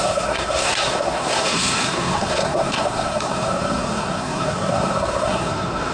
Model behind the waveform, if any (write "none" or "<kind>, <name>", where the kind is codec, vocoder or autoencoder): codec, SNAC